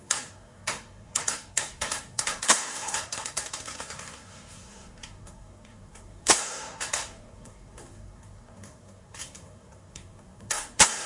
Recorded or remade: remade